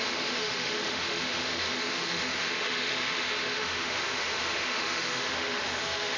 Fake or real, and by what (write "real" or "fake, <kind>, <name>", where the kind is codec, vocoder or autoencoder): fake, autoencoder, DAC-VAE